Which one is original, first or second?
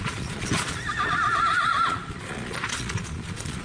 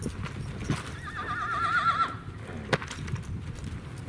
second